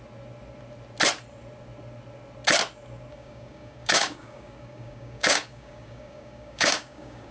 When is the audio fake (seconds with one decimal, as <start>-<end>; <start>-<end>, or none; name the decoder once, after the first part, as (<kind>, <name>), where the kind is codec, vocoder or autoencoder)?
3.1-7.3 (codec, DAC)

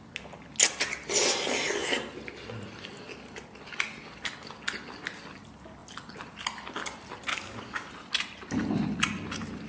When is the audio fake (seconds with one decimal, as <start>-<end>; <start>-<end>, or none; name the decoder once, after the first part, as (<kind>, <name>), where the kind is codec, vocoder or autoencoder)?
7.3-7.9 (codec, DAC)